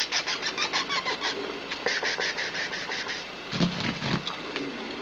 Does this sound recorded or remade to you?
recorded